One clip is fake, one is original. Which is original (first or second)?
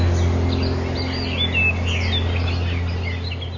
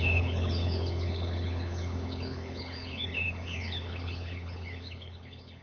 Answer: first